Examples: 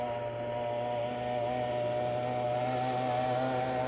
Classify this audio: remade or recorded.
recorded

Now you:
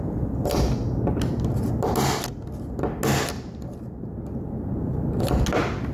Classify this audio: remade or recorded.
recorded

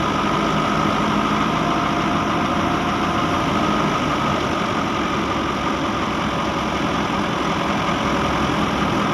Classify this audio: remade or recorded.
recorded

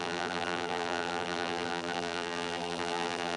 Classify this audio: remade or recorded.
remade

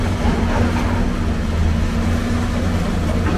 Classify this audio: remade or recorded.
recorded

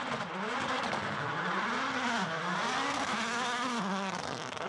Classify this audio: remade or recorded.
recorded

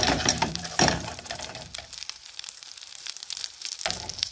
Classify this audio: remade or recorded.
remade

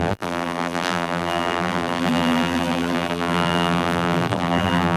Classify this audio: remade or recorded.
remade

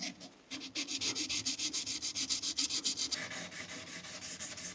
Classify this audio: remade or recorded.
recorded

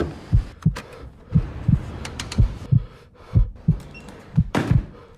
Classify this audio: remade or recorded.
remade